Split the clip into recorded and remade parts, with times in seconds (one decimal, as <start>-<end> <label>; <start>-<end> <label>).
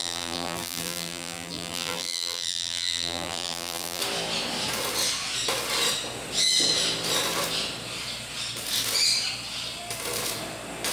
0.0-4.0 remade; 4.0-10.9 recorded